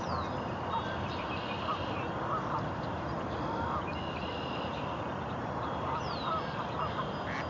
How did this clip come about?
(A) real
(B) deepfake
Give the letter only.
A